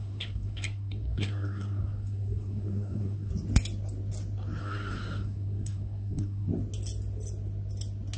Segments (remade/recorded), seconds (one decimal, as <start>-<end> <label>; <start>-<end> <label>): 0.0-3.3 remade; 3.3-4.6 recorded; 4.6-6.5 remade; 6.5-8.2 recorded